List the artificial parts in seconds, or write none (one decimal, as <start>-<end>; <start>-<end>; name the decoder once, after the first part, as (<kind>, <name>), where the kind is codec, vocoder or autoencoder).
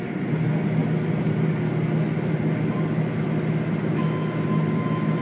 none